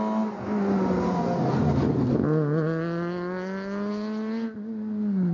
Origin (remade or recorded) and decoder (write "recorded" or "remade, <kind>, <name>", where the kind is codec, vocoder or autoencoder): recorded